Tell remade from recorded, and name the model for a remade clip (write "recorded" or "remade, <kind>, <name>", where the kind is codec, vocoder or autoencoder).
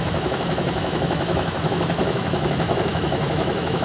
remade, autoencoder, DAC-VAE